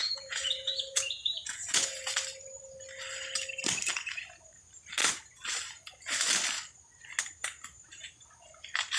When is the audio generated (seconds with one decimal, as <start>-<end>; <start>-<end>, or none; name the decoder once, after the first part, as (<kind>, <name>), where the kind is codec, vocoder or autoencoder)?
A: 0.0-2.1 (vocoder, Vocos)